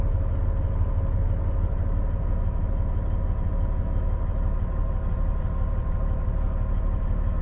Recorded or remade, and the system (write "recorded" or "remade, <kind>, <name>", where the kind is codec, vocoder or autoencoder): recorded